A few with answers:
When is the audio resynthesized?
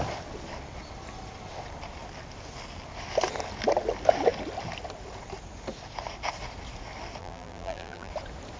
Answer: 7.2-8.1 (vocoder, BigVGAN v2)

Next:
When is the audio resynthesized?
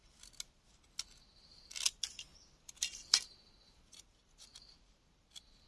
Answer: 2.3-3.2 (vocoder, BigVGAN v2); 4.5-5.3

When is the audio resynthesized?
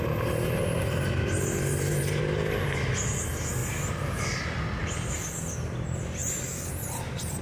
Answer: 0.6-2.2 (vocoder, BigVGAN v2); 3.6-4.6; 6.2-7.4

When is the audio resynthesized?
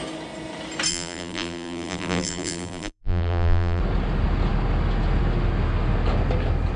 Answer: 0.9-3.8 (vocoder, BigVGAN v2)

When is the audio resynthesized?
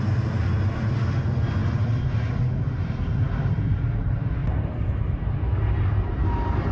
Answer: none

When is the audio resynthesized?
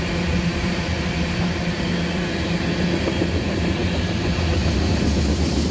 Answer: 0.6-1.4 (vocoder, BigVGAN v2)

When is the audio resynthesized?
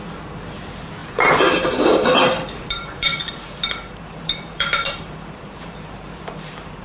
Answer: 0.0-6.8 (vocoder, BigVGAN v2)